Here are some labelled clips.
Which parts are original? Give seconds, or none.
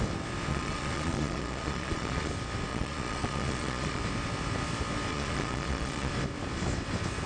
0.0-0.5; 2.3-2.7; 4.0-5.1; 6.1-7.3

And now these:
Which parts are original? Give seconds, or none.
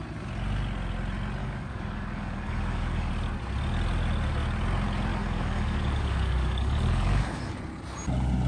0.0-1.4; 3.1-5.1; 7.6-8.5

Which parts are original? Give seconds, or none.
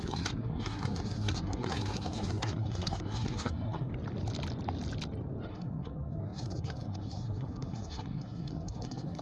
3.9-5.5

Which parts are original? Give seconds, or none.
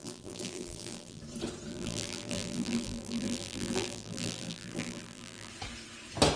1.2-1.7; 5.5-6.4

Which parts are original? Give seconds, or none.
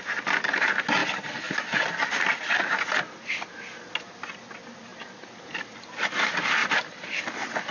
0.0-1.0; 3.8-4.9; 6.1-6.6; 7.2-7.7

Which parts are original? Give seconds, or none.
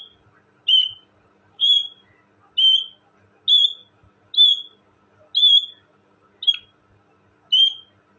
0.0-0.8; 2.1-8.2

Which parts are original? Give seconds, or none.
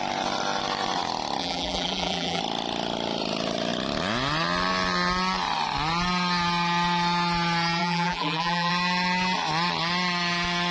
0.0-1.4; 2.4-7.8; 8.7-10.7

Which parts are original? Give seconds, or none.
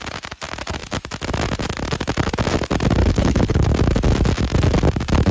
0.0-3.0; 3.7-5.3